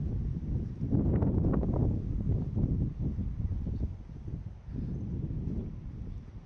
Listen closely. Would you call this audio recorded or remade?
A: recorded